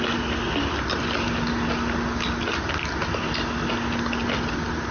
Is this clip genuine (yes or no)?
yes